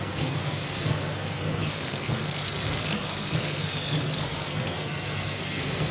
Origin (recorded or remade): remade